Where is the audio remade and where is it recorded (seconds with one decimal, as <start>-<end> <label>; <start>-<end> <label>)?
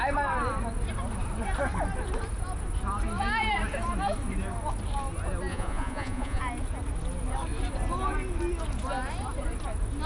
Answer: 0.0-5.5 recorded; 5.5-6.4 remade; 6.4-10.1 recorded